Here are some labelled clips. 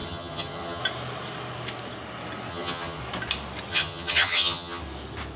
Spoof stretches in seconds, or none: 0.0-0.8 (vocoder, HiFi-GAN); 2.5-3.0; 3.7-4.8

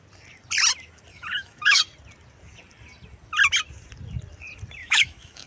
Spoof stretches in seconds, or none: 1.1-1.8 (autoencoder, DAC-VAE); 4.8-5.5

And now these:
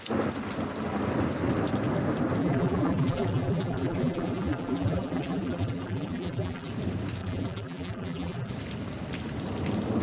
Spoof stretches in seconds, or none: 2.4-6.7 (vocoder, BigVGAN v2); 7.2-8.5